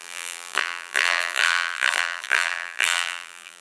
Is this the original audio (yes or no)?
no